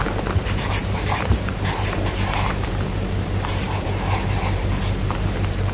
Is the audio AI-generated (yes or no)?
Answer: yes